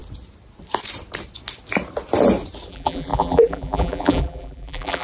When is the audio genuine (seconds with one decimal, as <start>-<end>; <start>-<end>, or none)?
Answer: 0.0-2.7